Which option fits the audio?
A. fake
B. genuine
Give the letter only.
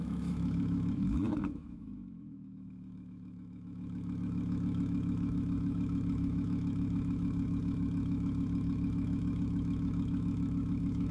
A